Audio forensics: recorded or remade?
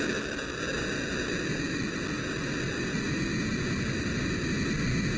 recorded